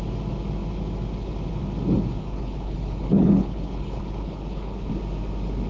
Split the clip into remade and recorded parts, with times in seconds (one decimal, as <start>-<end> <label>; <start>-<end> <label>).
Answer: 0.0-2.2 recorded; 2.2-4.9 remade; 4.9-5.7 recorded